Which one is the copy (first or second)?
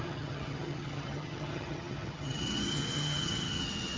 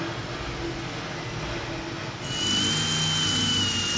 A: first